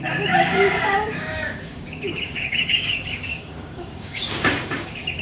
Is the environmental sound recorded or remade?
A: remade